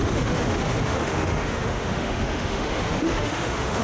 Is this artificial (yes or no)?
yes